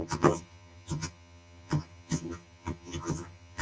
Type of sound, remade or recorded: remade